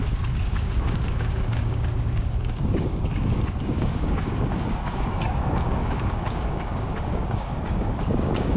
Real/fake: fake